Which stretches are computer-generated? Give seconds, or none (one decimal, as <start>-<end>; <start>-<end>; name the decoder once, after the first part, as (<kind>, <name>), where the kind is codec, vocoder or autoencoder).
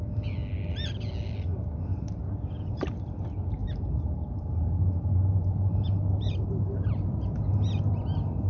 1.9-3.0 (vocoder, BigVGAN v2); 3.6-7.5